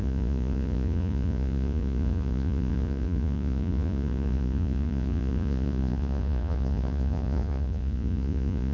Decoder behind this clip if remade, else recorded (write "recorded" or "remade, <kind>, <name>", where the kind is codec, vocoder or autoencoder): remade, vocoder, Vocos